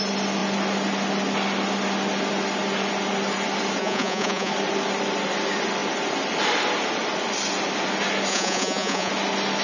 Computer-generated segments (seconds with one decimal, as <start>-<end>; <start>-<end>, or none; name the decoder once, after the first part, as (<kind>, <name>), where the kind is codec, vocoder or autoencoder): 3.8-4.5 (vocoder, Vocos); 8.3-9.1